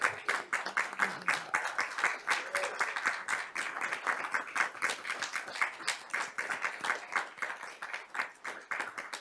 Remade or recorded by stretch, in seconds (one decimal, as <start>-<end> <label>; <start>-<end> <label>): 0.0-9.2 recorded